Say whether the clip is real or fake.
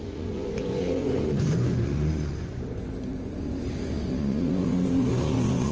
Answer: fake